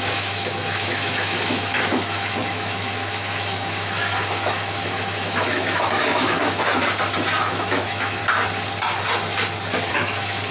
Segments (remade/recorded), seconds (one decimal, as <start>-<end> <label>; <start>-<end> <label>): 0.0-6.8 remade; 6.8-7.4 recorded; 7.4-8.2 remade; 8.2-9.9 recorded; 9.9-10.5 remade